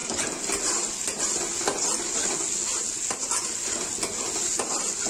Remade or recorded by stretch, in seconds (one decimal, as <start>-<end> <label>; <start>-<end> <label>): 0.0-5.1 recorded